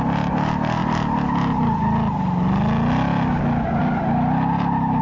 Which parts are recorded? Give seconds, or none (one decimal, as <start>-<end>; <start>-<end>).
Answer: 0.0-5.0